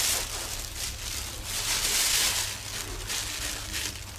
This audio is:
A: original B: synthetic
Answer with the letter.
A